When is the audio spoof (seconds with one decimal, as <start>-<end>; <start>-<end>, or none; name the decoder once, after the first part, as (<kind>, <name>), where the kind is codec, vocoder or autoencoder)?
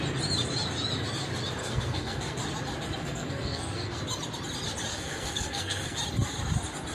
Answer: 1.6-2.4 (codec, SNAC); 3.0-4.0; 4.9-6.0